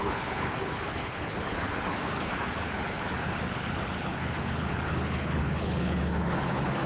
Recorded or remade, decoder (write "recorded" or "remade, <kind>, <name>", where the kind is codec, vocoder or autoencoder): remade, codec, HILCodec